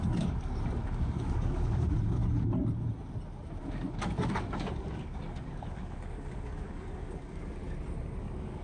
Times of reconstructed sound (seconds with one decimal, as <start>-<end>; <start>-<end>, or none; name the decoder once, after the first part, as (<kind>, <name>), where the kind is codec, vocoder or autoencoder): 0.0-2.2 (codec, DAC); 3.6-7.6; 8.2-8.6

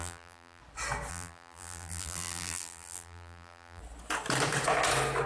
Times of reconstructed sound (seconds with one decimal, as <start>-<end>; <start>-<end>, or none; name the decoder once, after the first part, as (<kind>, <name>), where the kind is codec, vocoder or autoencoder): 0.0-0.6 (vocoder, BigVGAN v2); 1.1-3.8

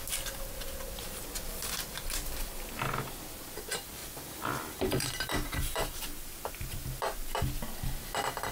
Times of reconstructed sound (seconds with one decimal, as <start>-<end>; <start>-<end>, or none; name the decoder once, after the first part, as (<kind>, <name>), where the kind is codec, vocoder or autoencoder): 4.0-6.5 (vocoder, BigVGAN v2)

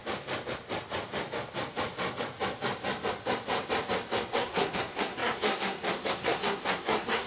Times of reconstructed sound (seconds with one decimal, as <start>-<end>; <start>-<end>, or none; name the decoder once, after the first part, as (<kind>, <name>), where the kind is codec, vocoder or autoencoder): 4.4-7.3 (codec, SNAC)

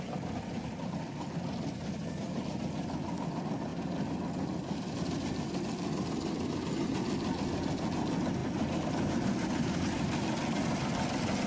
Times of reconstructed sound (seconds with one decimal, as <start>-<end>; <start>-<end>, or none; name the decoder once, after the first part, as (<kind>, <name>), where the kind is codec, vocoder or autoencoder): none

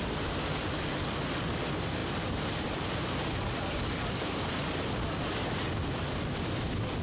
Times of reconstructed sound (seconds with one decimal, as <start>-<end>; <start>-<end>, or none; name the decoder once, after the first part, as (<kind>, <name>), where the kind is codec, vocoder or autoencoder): 2.0-3.3 (vocoder, BigVGAN v2)